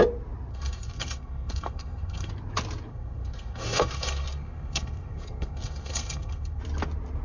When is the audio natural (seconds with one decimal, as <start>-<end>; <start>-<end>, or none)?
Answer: 0.0-0.5; 2.3-2.9; 6.6-7.2